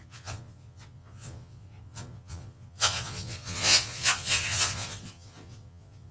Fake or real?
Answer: fake